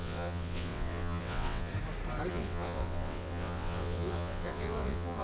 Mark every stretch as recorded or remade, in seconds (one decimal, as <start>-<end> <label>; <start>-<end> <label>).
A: 0.0-1.7 remade; 1.7-2.3 recorded; 2.3-5.2 remade